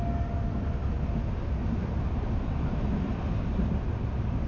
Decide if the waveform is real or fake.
real